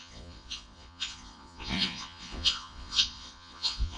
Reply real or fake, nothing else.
fake